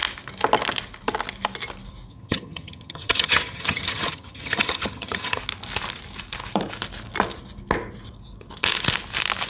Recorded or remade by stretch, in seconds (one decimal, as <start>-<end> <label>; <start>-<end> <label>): 0.0-2.1 recorded; 2.1-5.4 remade; 5.4-9.5 recorded